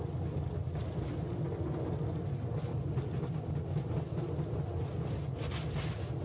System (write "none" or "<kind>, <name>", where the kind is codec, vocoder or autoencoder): none